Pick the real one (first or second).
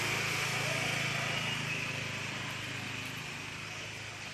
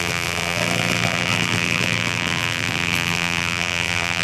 first